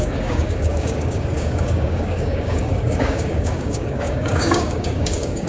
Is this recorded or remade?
remade